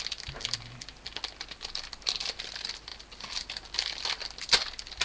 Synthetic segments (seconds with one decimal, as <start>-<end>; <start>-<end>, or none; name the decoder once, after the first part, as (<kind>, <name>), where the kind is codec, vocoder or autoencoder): none